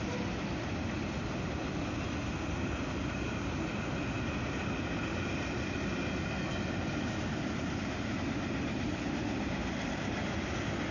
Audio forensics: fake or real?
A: real